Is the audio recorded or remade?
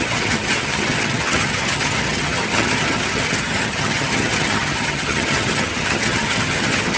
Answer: remade